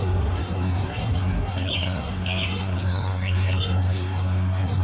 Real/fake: fake